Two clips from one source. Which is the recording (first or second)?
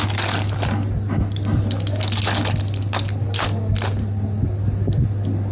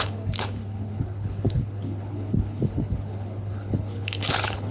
first